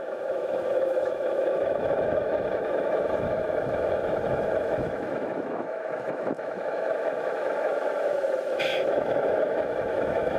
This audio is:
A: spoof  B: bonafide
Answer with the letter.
A